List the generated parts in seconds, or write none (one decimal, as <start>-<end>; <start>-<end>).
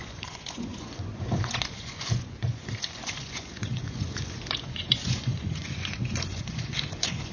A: 0.0-7.3